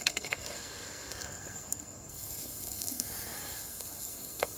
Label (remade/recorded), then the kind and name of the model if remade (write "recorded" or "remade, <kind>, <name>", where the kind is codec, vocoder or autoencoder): remade, codec, SNAC